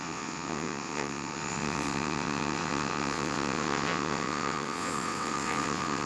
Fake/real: fake